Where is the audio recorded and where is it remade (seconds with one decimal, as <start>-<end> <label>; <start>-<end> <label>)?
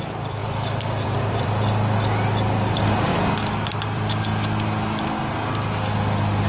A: 0.0-3.1 remade; 3.1-3.7 recorded; 3.7-4.3 remade; 4.3-6.5 recorded